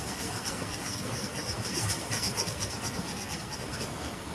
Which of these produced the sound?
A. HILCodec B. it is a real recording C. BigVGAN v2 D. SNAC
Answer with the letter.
D